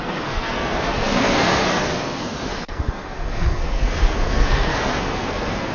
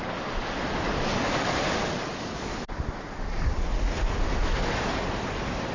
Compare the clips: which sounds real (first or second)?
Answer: second